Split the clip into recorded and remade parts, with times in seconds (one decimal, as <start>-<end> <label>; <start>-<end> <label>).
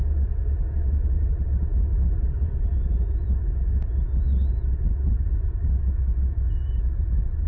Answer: 0.0-7.5 recorded